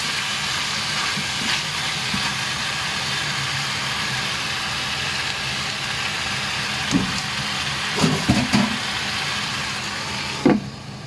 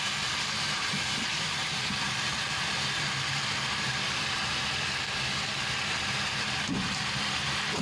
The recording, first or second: first